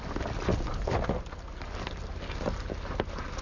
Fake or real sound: real